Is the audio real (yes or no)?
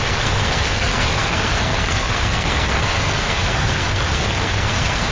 no